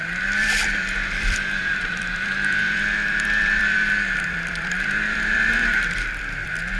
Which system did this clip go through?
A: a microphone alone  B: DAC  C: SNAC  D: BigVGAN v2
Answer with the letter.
D